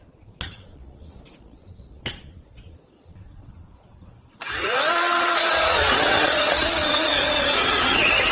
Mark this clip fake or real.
fake